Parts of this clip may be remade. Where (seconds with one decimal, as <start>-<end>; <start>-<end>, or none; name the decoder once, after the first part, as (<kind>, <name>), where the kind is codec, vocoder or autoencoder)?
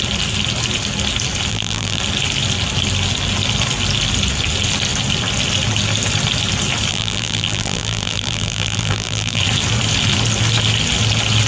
1.5-2.0 (vocoder, BigVGAN v2); 6.9-9.4